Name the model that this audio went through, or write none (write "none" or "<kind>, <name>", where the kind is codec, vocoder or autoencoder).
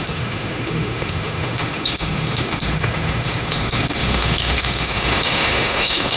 autoencoder, DAC-VAE